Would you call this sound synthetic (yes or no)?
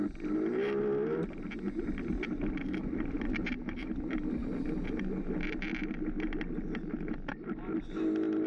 no